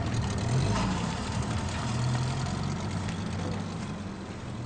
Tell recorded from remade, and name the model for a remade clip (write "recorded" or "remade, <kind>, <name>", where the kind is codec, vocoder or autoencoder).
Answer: recorded